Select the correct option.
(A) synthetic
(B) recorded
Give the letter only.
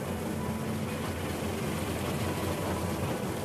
B